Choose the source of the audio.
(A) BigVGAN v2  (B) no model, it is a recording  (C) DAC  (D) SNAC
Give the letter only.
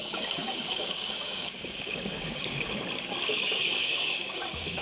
C